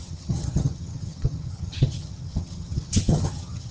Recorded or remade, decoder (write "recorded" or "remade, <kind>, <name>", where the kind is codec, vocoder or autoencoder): remade, vocoder, HiFi-GAN